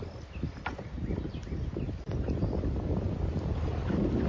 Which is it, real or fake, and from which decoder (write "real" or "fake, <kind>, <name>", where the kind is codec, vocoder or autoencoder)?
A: real